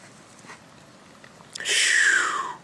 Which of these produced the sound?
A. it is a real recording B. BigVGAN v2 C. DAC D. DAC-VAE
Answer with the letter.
A